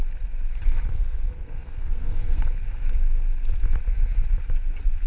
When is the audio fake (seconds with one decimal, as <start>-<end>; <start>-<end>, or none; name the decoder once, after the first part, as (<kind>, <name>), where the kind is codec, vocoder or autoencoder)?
0.9-2.4 (codec, SNAC)